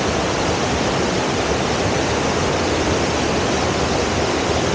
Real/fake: real